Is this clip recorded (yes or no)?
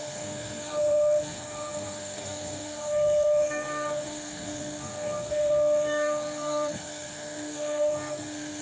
no